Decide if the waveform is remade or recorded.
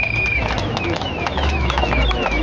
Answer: remade